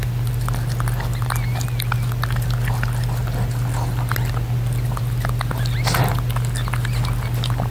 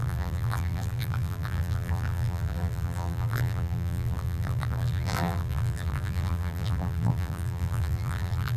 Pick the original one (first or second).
first